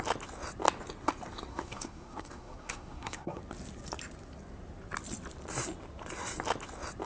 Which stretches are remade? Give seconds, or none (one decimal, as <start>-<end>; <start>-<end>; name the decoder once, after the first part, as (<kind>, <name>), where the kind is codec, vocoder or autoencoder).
1.5-3.4 (codec, SNAC)